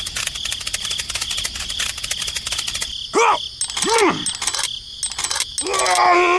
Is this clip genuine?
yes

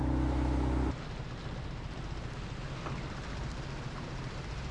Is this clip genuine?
yes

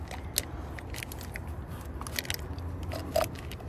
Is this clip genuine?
yes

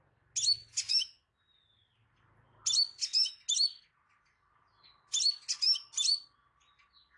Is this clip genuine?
yes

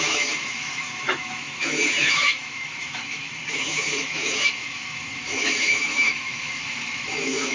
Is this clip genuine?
no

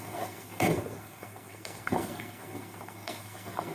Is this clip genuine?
no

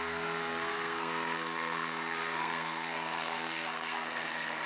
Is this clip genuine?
no